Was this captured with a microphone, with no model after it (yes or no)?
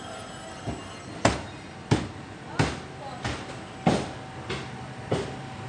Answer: yes